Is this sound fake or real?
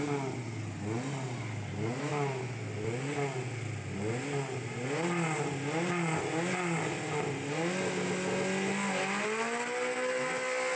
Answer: real